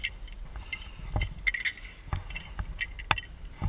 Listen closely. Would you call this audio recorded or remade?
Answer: recorded